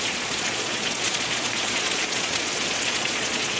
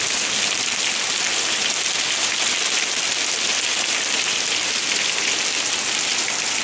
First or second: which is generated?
first